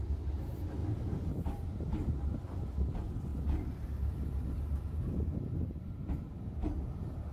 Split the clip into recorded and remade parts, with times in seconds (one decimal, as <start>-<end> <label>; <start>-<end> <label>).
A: 0.0-7.3 recorded

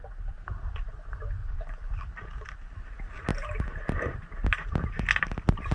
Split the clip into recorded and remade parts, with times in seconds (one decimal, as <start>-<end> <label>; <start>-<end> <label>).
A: 0.0-1.4 recorded; 1.4-2.1 remade; 2.1-5.7 recorded

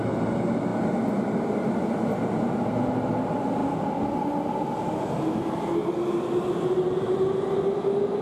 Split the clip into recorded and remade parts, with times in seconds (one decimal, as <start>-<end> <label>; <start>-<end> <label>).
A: 0.0-8.2 recorded

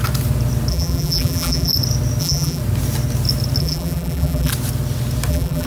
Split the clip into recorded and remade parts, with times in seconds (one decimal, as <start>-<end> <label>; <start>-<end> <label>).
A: 0.0-0.7 recorded; 0.7-1.7 remade; 1.7-2.2 recorded; 2.2-2.6 remade; 2.6-3.6 recorded; 3.6-4.5 remade; 4.5-5.3 recorded; 5.3-5.7 remade

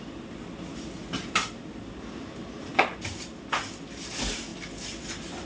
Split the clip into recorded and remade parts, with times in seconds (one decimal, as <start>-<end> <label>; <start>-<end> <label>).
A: 0.0-5.5 recorded